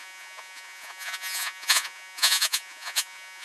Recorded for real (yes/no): no